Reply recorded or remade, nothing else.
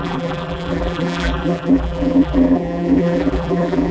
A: remade